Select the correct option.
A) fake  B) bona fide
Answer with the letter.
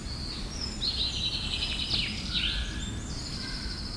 B